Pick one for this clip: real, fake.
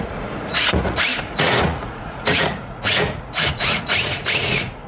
fake